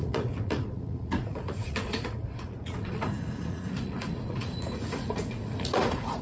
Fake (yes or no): yes